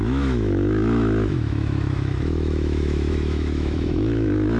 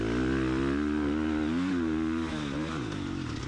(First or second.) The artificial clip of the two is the first